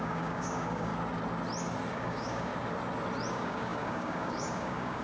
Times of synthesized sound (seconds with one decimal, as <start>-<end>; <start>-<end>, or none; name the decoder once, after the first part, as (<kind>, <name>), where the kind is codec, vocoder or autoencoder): 0.0-0.9 (codec, DAC); 1.9-2.5; 3.3-5.0